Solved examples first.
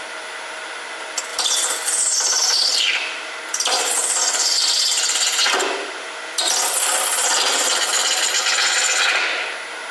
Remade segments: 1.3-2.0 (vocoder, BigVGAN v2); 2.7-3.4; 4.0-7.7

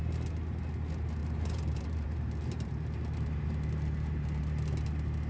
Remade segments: 1.2-4.4 (vocoder, BigVGAN v2)